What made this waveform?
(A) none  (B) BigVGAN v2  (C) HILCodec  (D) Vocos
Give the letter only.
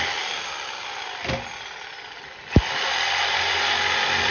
A